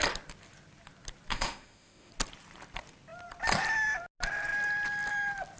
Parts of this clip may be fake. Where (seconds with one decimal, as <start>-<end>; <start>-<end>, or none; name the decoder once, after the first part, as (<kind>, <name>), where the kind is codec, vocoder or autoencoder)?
1.3-2.1 (autoencoder, DAC-VAE)